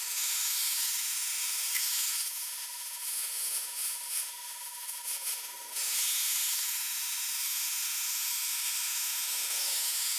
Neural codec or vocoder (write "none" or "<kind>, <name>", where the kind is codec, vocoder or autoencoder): autoencoder, DAC-VAE